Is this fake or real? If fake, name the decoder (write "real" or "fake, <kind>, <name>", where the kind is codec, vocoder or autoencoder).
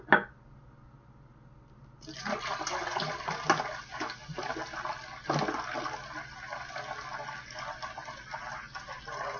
real